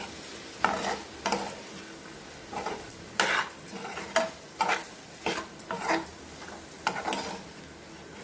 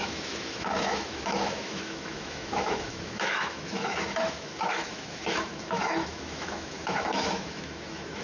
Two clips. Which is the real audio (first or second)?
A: first